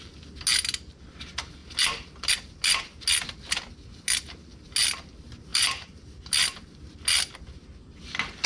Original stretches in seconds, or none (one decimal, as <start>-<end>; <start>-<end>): 0.0-5.5; 6.1-8.5